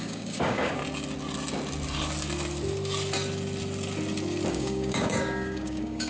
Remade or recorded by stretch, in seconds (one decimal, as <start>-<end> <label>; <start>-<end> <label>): 0.0-0.8 remade; 0.8-4.5 recorded; 4.5-6.1 remade